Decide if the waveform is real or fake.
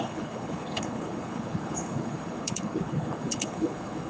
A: fake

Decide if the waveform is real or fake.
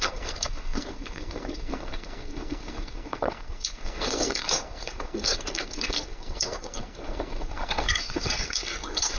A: fake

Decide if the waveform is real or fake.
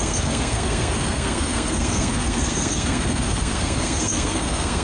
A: fake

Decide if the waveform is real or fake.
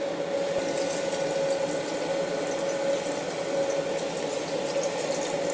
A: real